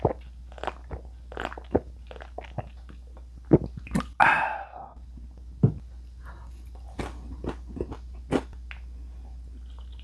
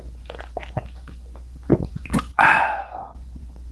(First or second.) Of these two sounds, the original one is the first